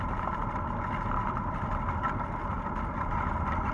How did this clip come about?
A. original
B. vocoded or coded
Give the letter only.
A